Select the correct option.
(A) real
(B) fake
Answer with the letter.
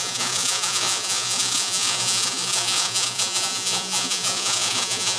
B